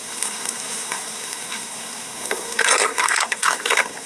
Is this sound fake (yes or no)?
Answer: yes